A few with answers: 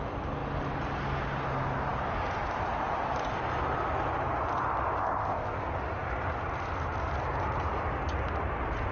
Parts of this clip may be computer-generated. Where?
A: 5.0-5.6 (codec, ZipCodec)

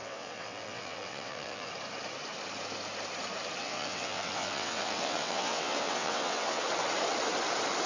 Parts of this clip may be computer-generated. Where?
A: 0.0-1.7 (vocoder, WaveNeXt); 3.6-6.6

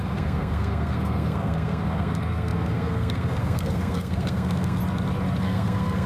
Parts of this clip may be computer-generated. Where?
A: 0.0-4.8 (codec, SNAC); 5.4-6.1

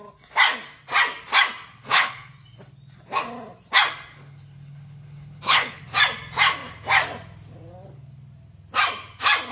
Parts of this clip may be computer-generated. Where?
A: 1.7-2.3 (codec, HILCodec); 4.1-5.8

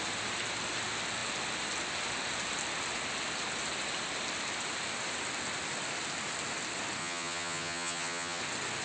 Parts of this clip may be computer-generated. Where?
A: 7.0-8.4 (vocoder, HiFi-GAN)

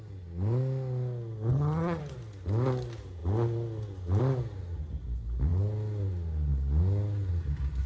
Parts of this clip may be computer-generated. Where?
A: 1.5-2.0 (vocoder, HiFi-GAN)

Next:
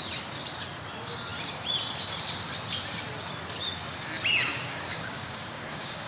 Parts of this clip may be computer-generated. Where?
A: 4.5-6.1 (codec, DAC)